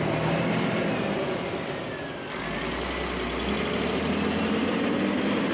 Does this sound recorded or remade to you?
recorded